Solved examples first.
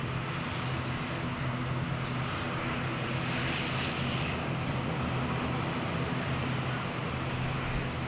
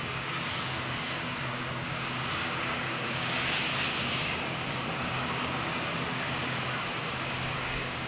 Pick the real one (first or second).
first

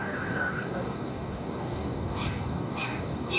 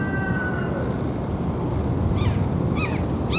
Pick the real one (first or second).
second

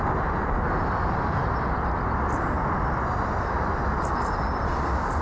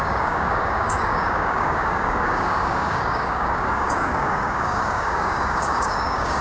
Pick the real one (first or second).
first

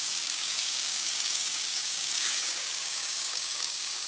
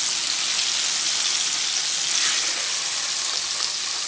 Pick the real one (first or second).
second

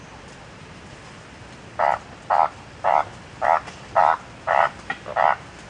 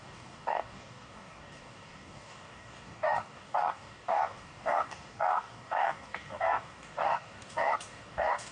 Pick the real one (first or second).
first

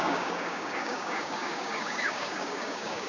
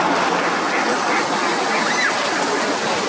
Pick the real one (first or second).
second